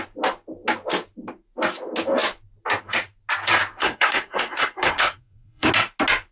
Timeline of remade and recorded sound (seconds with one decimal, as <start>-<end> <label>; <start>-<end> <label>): 0.0-3.8 recorded; 3.8-5.7 remade; 5.7-6.3 recorded